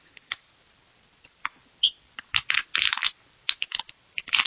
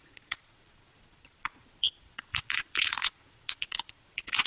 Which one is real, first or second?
first